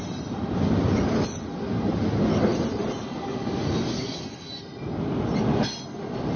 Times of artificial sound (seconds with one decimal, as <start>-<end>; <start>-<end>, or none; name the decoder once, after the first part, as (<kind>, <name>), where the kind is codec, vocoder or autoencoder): none